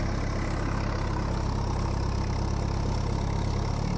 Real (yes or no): yes